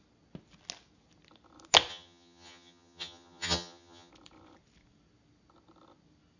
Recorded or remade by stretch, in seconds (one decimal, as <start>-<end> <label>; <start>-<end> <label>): 0.0-1.9 recorded; 1.9-4.1 remade; 4.1-6.4 recorded